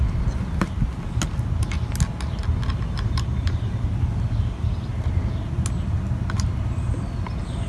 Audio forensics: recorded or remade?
recorded